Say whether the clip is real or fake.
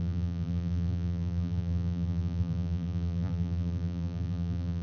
fake